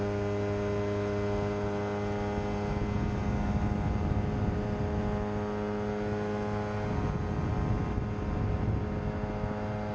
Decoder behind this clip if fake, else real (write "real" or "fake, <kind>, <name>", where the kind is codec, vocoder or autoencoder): real